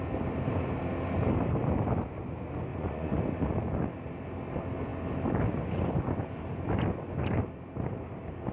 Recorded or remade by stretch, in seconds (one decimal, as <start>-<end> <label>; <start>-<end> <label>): 0.0-2.7 recorded; 2.7-3.2 remade; 3.2-8.5 recorded